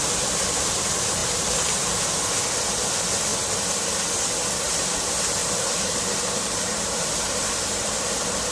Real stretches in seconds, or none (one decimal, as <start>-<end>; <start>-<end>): 0.0-1.2; 2.0-5.4; 8.0-8.5